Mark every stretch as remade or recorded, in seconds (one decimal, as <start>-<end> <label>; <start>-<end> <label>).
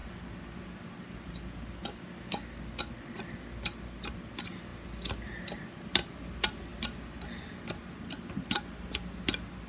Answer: 0.0-9.7 recorded